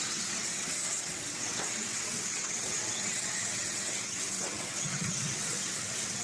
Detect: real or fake fake